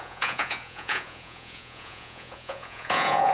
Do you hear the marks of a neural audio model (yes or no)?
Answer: yes